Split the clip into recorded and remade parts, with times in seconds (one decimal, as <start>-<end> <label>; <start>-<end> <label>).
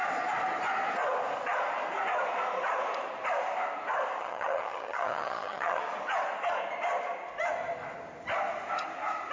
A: 0.0-4.2 recorded; 4.2-5.8 remade; 5.8-9.3 recorded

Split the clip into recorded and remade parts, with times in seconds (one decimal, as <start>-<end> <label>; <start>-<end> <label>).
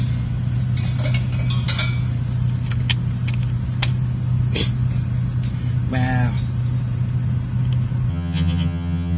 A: 0.0-8.1 recorded; 8.1-9.2 remade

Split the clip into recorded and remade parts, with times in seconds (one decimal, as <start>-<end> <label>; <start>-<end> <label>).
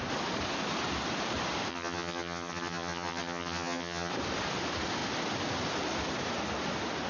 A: 0.0-1.7 recorded; 1.7-4.1 remade; 4.1-7.1 recorded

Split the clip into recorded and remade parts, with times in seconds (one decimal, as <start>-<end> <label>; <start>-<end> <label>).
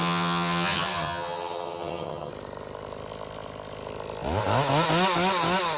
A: 0.0-2.3 remade; 2.3-5.8 recorded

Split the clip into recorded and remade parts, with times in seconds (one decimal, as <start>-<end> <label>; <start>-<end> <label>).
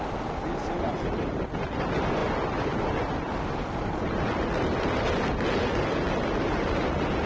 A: 0.0-7.3 recorded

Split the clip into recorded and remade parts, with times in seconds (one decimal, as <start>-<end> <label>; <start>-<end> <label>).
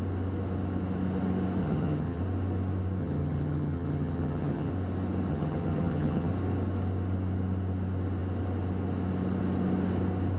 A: 0.0-1.6 recorded; 1.6-2.2 remade; 2.2-3.0 recorded; 3.0-4.7 remade; 4.7-5.3 recorded; 5.3-6.3 remade; 6.3-10.4 recorded